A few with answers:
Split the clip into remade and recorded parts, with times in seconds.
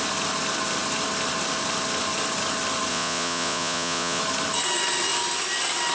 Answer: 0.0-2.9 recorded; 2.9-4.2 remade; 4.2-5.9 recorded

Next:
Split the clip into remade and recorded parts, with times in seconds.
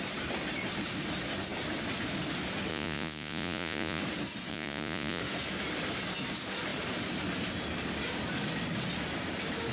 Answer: 0.0-2.7 recorded; 2.7-4.0 remade; 4.0-4.5 recorded; 4.5-5.2 remade; 5.2-9.7 recorded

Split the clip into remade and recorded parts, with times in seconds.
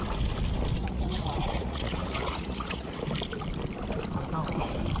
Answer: 0.0-0.8 recorded; 0.8-3.0 remade; 3.0-5.0 recorded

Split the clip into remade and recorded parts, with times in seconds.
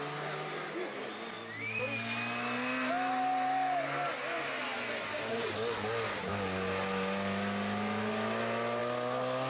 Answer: 0.0-9.5 recorded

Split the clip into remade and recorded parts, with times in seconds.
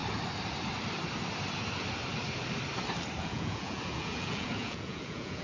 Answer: 0.0-3.2 recorded; 3.2-5.4 remade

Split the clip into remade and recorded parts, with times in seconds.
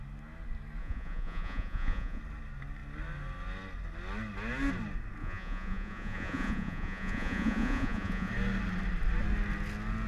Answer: 0.0-0.8 recorded; 0.8-2.2 remade; 2.2-5.2 recorded; 5.2-8.3 remade; 8.3-10.1 recorded